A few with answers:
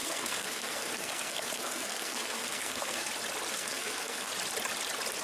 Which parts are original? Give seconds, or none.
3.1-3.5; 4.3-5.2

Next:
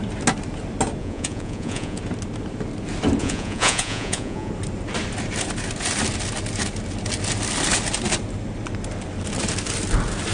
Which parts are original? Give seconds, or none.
0.0-1.0; 2.0-3.2; 4.5-10.3

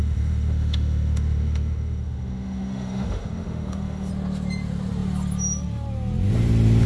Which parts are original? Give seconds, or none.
4.1-6.9

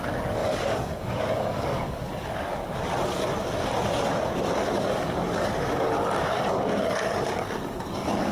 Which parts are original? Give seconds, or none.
2.8-4.7

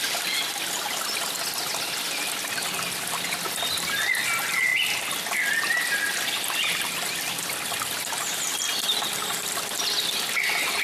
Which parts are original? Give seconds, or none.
0.0-10.8

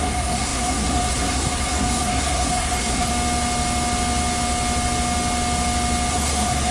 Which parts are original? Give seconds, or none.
3.1-6.1

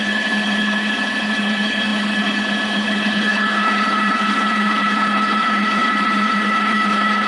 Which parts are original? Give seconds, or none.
none